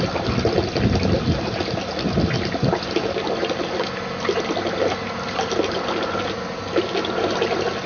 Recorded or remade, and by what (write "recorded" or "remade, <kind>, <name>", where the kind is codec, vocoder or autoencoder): recorded